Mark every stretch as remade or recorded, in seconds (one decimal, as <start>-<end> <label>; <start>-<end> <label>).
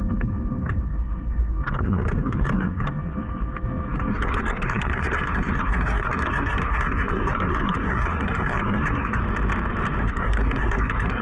0.0-9.2 remade; 9.2-10.0 recorded; 10.0-11.2 remade